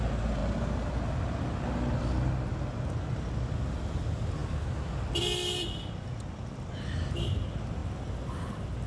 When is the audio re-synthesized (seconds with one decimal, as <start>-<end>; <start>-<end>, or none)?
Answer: 7.8-8.9